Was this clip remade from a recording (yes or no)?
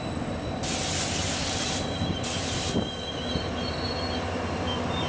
no